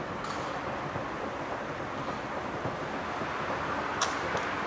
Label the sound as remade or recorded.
recorded